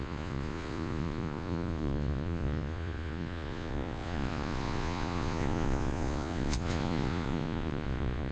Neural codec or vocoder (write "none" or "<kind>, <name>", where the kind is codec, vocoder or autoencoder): vocoder, Vocos